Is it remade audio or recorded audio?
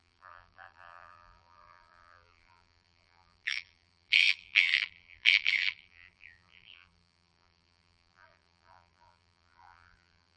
remade